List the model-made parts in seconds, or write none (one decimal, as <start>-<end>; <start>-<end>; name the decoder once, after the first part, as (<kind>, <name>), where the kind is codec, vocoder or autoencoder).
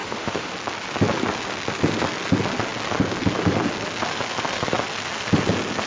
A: 0.0-0.5 (autoencoder, DAC-VAE)